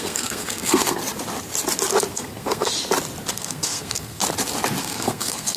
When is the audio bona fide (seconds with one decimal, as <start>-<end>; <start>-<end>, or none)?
1.0-2.1; 2.7-3.3; 4.2-4.8